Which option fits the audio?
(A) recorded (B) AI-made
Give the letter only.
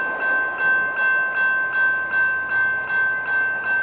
A